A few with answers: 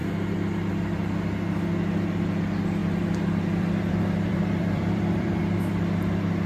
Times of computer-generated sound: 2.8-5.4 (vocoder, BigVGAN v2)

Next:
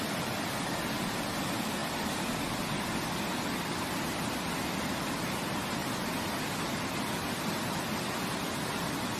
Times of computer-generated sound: 1.8-5.2 (vocoder, BigVGAN v2); 5.8-7.6

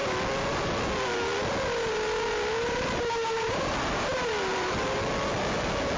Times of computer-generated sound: none

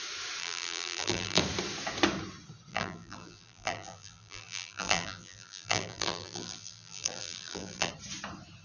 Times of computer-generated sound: 0.4-1.4 (vocoder, BigVGAN v2); 2.7-7.9

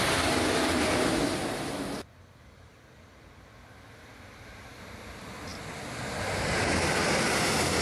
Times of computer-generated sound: 5.5-6.1 (vocoder, BigVGAN v2)

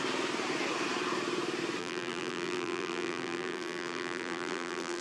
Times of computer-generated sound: 1.8-5.0 (vocoder, BigVGAN v2)

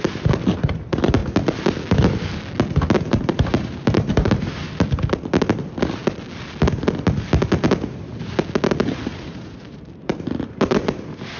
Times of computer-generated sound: 0.0-1.2 (vocoder, BigVGAN v2); 3.1-4.6; 9.1-11.4

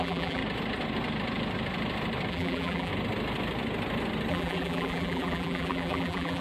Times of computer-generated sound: 0.0-0.4 (vocoder, BigVGAN v2); 2.3-2.9; 4.3-6.4